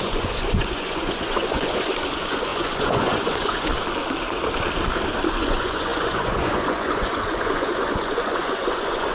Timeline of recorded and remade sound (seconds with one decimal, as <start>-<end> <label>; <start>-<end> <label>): 0.0-3.7 remade; 3.7-5.3 recorded; 5.3-9.1 remade